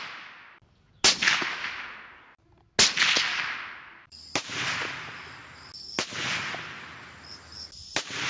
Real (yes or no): yes